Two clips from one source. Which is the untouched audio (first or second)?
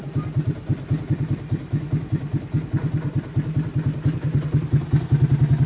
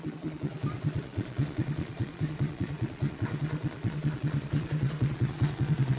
first